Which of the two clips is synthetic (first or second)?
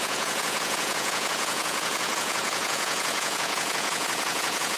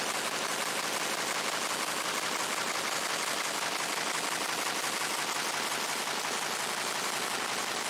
first